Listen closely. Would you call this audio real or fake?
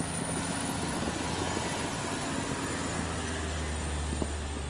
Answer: real